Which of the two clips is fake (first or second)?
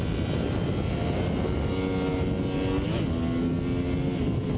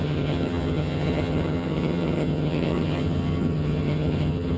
second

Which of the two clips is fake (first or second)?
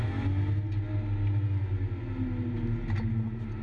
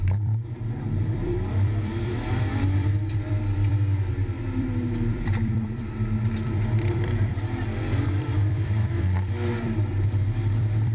second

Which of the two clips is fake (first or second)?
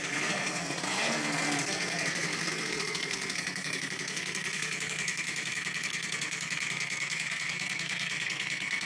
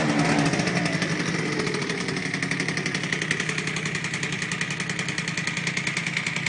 first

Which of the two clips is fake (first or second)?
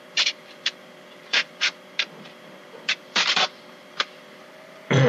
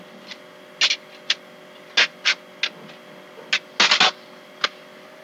first